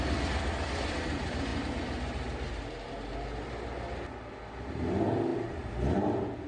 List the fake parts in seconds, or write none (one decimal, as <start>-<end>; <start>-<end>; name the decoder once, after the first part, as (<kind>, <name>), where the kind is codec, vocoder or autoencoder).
none